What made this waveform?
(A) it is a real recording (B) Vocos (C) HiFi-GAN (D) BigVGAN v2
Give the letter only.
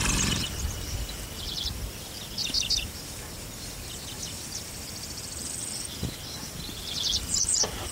A